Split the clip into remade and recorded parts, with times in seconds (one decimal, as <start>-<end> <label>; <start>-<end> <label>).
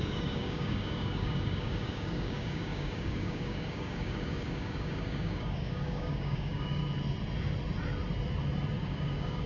0.0-6.8 remade; 6.8-8.8 recorded; 8.8-9.5 remade